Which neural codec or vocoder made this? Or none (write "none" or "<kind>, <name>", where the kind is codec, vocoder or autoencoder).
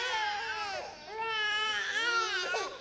none